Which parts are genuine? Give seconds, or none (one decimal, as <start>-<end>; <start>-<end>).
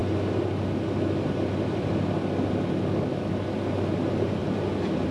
0.0-5.1